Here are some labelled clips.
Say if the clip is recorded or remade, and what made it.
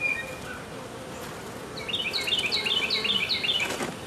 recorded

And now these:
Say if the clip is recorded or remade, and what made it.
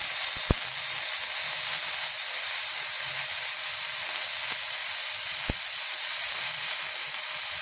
recorded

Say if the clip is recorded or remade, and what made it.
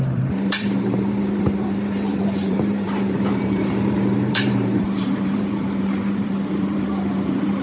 remade, vocoder, BigVGAN v2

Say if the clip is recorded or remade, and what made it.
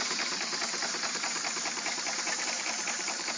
remade, vocoder, BigVGAN v2